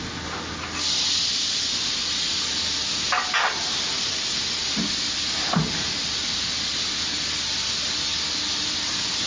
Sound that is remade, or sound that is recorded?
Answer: recorded